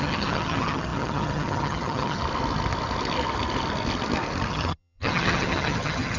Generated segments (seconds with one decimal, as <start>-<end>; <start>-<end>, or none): 0.0-2.2; 4.5-6.2